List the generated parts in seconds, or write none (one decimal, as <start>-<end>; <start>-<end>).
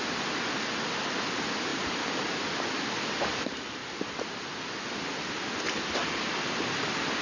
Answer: none